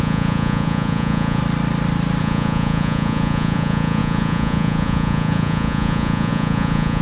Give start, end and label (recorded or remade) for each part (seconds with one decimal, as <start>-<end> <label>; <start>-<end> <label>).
0.0-1.4 remade; 1.4-2.2 recorded; 2.2-7.0 remade